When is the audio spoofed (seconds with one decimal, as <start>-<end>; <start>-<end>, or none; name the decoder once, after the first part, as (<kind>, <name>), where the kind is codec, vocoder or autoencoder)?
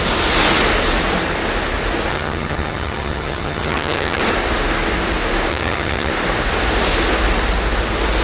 2.1-4.2 (vocoder, HiFi-GAN); 5.5-6.1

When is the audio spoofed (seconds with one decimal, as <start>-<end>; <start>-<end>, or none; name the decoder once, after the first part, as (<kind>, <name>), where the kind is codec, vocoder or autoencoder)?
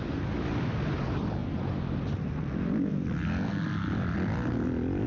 none